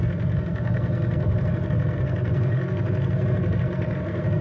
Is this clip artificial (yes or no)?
yes